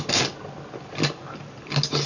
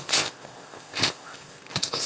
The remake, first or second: second